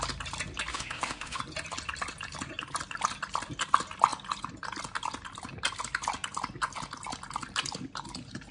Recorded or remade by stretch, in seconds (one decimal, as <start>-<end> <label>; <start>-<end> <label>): 0.0-0.7 recorded; 0.7-1.4 remade; 1.4-8.5 recorded